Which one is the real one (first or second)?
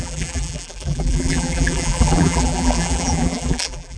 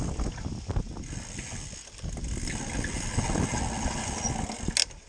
second